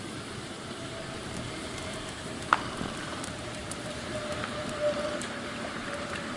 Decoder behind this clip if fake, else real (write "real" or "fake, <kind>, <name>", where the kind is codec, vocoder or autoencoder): fake, vocoder, BigVGAN v2